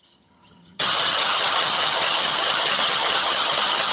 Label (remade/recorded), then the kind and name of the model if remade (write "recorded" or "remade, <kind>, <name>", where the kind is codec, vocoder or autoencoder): remade, vocoder, HiFi-GAN